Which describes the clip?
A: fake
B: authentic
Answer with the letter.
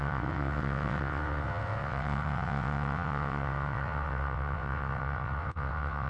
A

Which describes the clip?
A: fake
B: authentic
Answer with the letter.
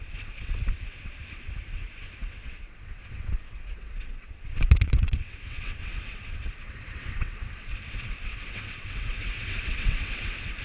A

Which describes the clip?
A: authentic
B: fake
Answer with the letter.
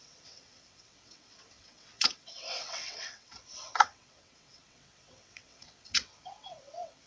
B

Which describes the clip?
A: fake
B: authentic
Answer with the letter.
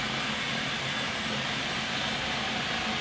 B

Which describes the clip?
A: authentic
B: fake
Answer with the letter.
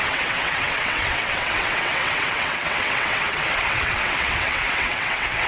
B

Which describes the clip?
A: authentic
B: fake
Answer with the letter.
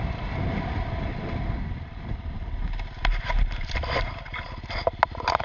A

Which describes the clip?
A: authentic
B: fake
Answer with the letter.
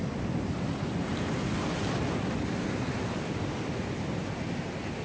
A